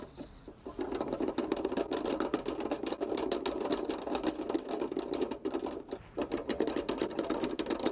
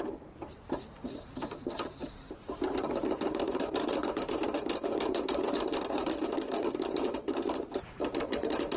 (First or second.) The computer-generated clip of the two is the second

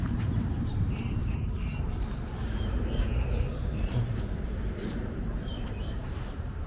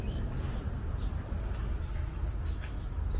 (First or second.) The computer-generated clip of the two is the first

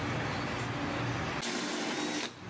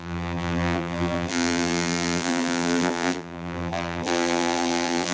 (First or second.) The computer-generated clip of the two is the second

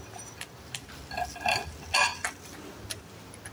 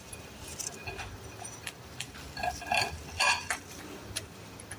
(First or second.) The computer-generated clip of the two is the second